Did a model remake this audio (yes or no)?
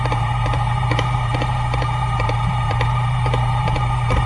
yes